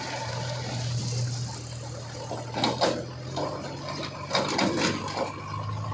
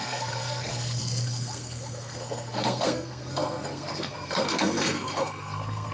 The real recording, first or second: first